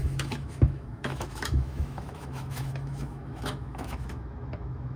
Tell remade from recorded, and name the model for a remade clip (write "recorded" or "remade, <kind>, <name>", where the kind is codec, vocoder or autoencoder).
remade, autoencoder, DAC-VAE